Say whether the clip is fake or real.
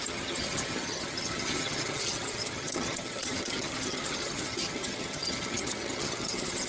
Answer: fake